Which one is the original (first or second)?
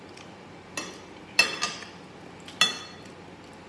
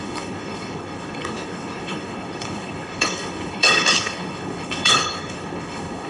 first